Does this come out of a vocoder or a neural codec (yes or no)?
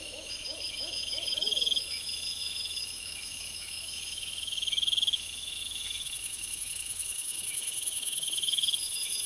yes